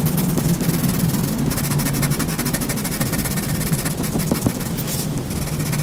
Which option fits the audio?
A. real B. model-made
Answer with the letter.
A